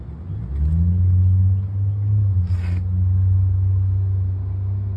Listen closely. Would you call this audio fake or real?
real